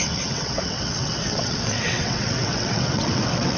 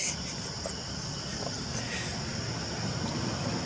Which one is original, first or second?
second